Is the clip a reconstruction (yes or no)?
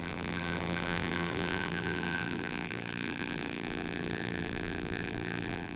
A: yes